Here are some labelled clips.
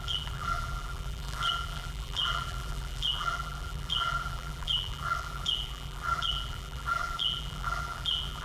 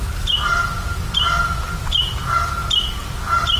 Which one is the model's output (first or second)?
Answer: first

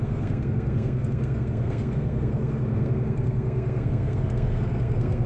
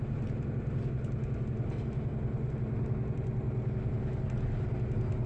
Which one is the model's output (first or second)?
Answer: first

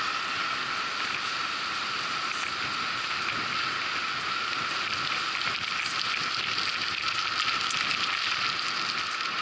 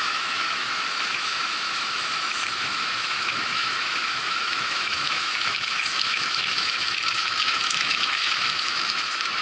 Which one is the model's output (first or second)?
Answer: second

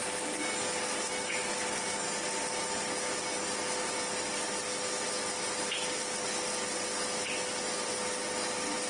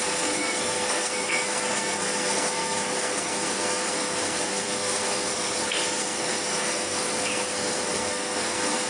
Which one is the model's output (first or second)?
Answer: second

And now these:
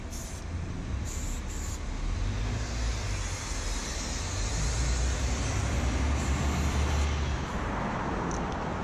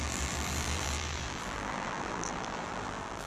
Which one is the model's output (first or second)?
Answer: second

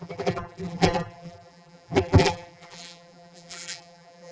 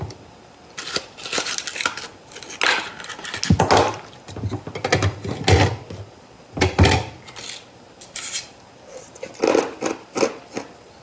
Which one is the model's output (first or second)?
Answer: first